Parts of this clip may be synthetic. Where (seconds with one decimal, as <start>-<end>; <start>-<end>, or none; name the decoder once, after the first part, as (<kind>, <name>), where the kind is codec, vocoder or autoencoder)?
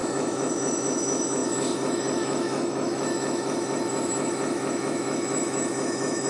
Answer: 0.0-6.3 (autoencoder, DAC-VAE)